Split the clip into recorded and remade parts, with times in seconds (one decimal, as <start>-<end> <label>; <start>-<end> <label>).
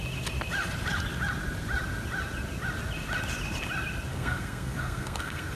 0.0-4.1 recorded; 4.1-5.6 remade